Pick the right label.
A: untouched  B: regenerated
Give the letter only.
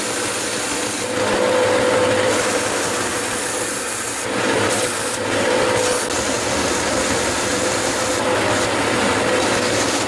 A